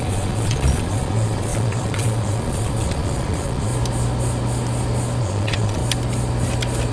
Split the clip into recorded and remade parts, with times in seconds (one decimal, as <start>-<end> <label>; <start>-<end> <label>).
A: 0.0-3.7 remade; 3.7-5.2 recorded; 5.2-5.8 remade; 5.8-6.9 recorded